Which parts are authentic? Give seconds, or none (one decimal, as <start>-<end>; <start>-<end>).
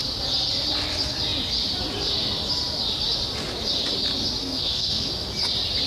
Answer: 0.0-4.4; 5.1-5.9